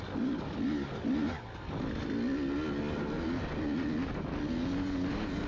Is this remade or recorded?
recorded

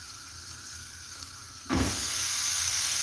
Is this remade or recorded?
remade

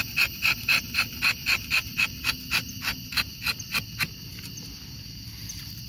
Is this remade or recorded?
recorded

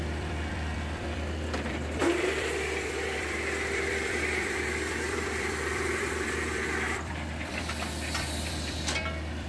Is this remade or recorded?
remade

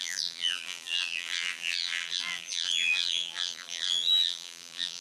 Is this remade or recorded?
remade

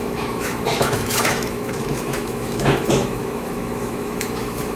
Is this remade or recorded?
remade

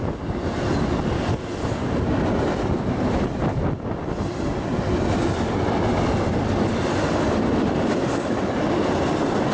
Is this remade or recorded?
recorded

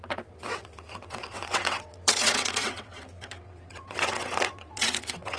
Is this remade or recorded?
remade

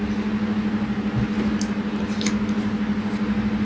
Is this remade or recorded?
recorded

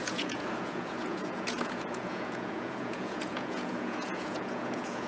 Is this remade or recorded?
remade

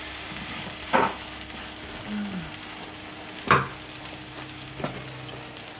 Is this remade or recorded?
recorded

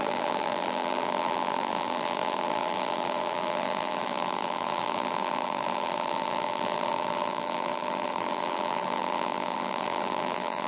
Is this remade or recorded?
remade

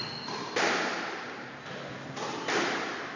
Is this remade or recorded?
recorded